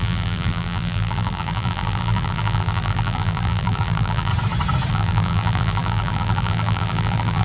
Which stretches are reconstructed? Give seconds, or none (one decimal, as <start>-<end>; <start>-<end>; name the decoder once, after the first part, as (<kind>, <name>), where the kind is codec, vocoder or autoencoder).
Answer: 0.0-4.3 (vocoder, BigVGAN v2); 4.9-7.4

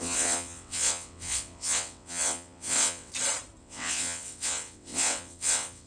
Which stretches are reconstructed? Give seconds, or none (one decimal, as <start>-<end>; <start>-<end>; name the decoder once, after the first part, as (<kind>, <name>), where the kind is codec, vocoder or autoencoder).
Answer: 0.0-3.1 (vocoder, WaveNeXt); 3.6-5.9

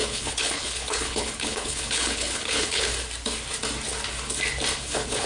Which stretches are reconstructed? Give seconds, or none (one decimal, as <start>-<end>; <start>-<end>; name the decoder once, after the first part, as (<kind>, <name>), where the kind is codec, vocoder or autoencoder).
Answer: 0.0-2.9 (codec, HILCodec); 4.8-5.3

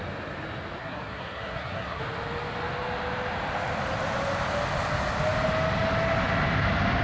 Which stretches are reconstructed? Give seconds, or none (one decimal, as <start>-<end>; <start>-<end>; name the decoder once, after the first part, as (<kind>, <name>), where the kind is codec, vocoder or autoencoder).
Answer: 0.8-2.0 (codec, SNAC)

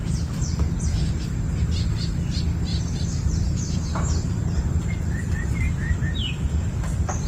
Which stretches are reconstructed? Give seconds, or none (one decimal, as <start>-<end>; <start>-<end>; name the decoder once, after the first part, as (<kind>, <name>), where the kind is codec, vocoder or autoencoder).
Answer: 2.7-7.3 (vocoder, BigVGAN v2)

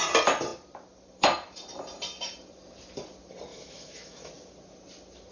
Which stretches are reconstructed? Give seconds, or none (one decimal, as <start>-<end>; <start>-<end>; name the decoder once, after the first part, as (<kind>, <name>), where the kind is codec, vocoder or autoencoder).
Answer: 3.5-4.3 (autoencoder, DAC-VAE)

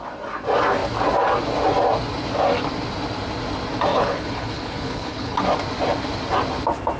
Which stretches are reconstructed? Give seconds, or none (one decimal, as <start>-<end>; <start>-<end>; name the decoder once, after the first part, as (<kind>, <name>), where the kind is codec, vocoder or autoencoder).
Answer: 3.9-5.4 (codec, HILCodec)

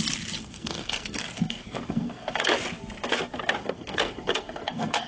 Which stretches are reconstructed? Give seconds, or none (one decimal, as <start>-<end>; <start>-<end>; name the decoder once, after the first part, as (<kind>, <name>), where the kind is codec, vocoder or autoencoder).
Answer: 0.4-2.4 (codec, SNAC); 3.6-5.1